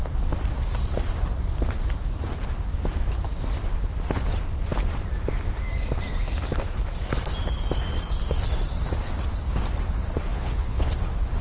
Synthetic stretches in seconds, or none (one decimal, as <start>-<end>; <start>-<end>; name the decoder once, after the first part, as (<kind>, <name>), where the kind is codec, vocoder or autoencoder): 10.3-10.9 (vocoder, Vocos)